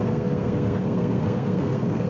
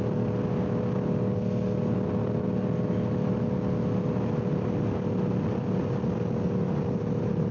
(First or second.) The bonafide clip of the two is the second